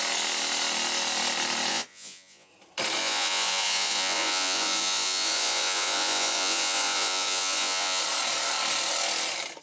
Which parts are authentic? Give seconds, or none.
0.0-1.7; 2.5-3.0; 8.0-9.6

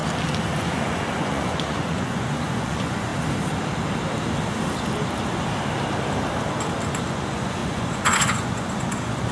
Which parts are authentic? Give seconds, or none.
0.0-0.6; 3.1-7.1

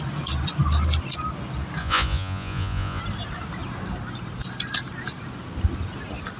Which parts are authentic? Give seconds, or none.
0.0-1.8; 3.0-6.4

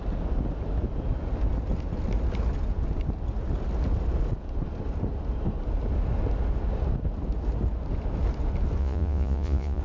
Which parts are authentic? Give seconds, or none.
0.0-8.8

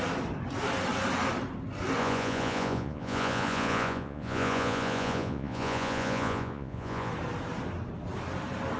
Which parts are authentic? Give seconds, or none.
0.0-2.0; 7.1-8.8